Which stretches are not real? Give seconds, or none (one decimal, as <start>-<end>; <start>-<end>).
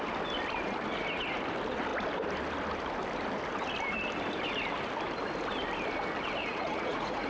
6.4-7.3